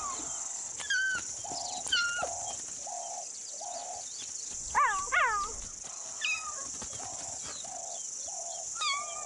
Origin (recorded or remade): recorded